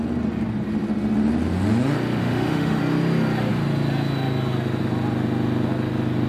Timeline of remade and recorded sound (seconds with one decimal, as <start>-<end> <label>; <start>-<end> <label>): 0.0-2.2 recorded; 2.2-2.8 remade; 2.8-6.3 recorded